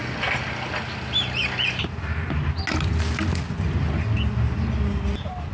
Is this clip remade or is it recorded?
recorded